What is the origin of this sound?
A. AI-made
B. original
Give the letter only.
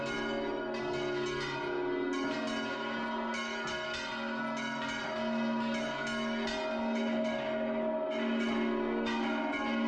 B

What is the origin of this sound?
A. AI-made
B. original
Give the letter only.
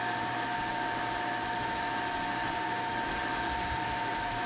A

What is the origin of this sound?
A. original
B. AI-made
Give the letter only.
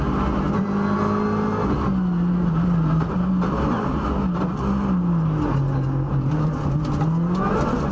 A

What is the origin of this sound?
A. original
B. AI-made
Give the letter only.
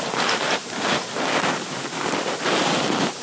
A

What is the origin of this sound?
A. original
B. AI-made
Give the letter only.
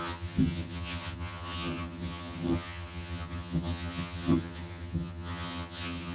B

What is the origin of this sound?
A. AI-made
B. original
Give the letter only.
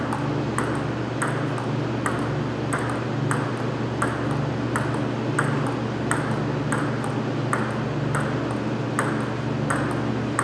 B